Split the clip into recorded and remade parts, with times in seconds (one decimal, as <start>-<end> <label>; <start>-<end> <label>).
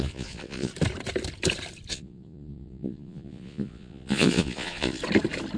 0.0-0.7 remade; 0.7-1.9 recorded; 1.9-5.0 remade; 5.0-5.6 recorded